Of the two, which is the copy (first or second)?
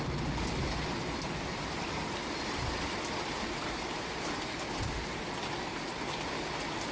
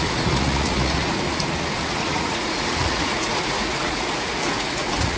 second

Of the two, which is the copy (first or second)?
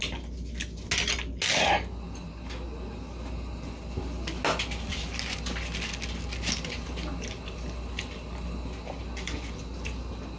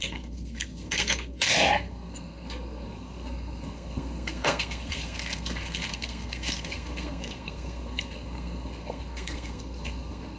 second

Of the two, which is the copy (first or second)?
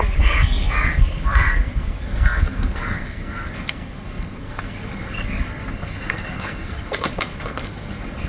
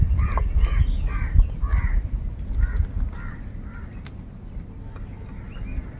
first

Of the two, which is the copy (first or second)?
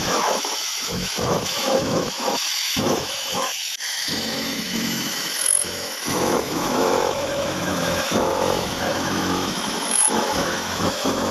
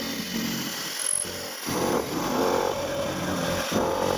first